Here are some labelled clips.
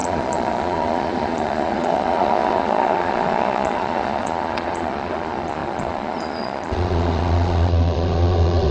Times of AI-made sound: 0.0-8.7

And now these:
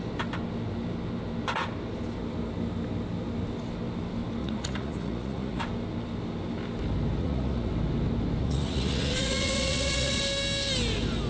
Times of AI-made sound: 4.4-5.6; 7.2-7.7; 8.4-10.2

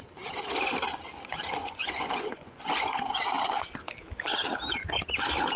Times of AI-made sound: 1.6-3.1

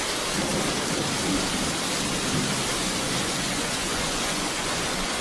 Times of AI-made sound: 2.8-5.2

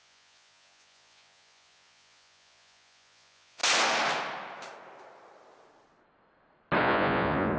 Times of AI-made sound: 0.0-3.6; 6.8-7.6

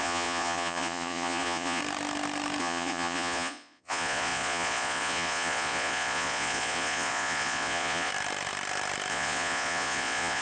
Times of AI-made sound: 0.0-1.8; 2.6-8.1; 9.1-10.4

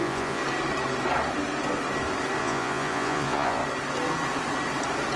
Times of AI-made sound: 0.0-0.4; 2.4-3.6